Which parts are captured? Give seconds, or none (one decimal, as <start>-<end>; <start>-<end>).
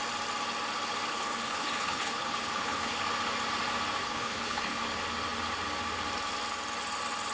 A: 0.0-1.1; 3.0-4.0; 4.8-7.3